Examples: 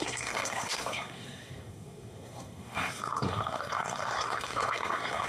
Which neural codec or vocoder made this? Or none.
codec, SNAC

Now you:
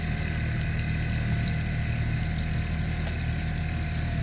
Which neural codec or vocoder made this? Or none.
none